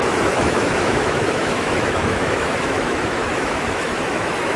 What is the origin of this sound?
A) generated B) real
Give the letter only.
A